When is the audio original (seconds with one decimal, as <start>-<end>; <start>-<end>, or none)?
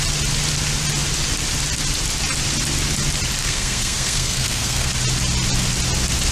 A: 0.0-3.4; 4.9-6.3